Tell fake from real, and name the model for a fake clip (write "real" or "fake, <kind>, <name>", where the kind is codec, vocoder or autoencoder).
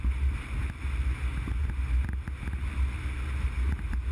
real